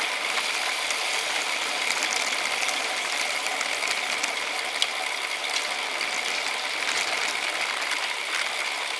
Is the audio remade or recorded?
recorded